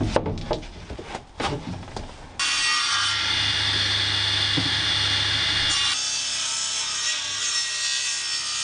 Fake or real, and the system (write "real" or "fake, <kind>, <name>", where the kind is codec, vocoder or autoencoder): real